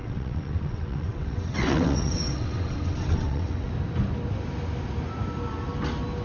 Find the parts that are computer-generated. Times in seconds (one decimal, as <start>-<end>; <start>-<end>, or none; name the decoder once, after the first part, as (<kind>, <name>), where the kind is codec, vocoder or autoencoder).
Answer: 0.0-3.7 (vocoder, WaveNeXt)